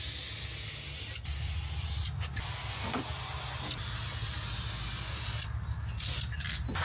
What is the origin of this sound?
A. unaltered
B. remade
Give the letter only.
A